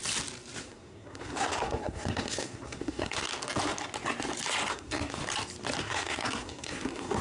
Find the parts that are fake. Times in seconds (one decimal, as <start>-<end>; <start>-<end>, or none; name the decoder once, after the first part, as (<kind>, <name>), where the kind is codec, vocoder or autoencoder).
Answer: 0.6-3.3 (codec, SNAC); 4.7-5.2; 5.8-7.2